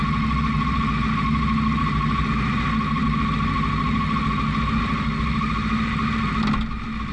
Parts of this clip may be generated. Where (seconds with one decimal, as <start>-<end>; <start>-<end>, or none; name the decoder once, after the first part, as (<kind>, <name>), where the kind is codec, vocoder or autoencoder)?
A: none